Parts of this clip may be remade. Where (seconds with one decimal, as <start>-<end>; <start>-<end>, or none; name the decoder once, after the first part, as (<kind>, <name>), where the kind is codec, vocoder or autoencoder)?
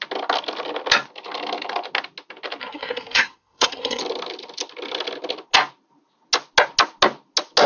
2.6-4.0 (codec, SNAC)